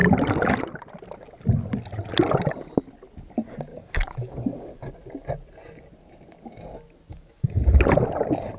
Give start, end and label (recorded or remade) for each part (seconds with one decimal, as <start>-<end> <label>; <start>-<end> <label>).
0.0-3.7 recorded; 3.7-4.9 remade; 4.9-7.1 recorded; 7.1-7.6 remade; 7.6-8.6 recorded